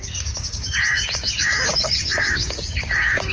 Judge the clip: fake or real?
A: fake